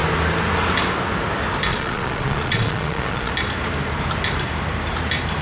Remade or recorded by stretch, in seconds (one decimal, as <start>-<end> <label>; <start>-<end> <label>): 0.0-1.7 recorded; 1.7-3.3 remade; 3.3-5.4 recorded